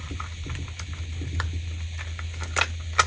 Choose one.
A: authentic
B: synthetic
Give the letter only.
A